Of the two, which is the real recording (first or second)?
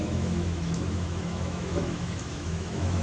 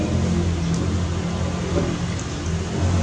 second